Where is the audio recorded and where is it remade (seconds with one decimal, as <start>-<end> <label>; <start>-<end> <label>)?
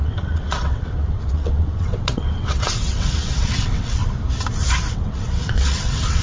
0.0-4.0 remade; 4.0-4.9 recorded; 4.9-6.2 remade